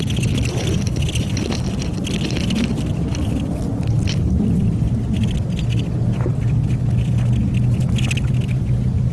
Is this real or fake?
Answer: real